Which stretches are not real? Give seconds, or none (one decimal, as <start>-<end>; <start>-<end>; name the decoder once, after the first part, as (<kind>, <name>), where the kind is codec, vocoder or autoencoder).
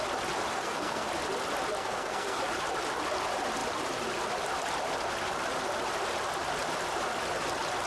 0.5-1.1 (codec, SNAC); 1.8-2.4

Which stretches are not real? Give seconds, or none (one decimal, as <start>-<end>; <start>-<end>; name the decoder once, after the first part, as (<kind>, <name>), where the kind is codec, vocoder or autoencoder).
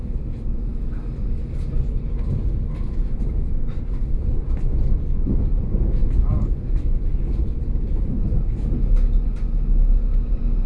none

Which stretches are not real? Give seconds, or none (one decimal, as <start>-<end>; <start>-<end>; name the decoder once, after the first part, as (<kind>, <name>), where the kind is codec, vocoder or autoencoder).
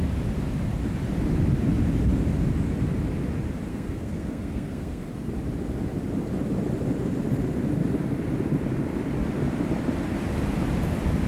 3.7-5.3 (codec, SNAC)